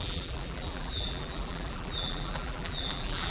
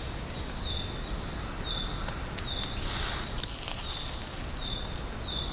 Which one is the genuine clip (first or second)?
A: second